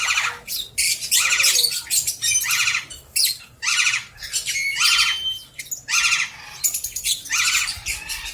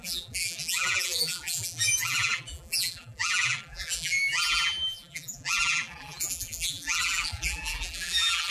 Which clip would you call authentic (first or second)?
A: first